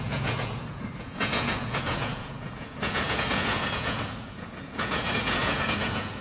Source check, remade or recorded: remade